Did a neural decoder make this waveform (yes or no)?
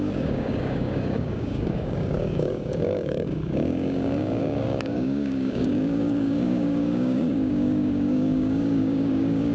yes